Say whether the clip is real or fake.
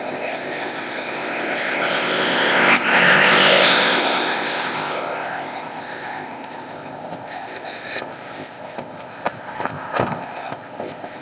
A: fake